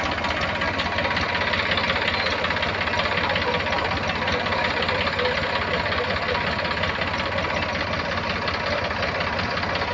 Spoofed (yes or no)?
no